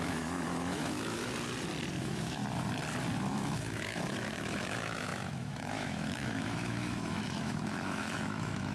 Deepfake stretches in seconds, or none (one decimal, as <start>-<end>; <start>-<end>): 0.0-1.2; 2.0-2.4; 3.3-8.7